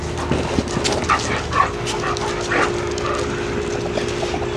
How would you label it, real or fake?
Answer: real